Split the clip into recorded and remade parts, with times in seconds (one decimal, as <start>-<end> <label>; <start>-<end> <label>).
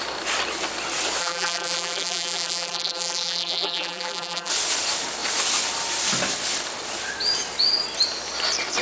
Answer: 0.0-1.2 recorded; 1.2-4.5 remade; 4.5-8.8 recorded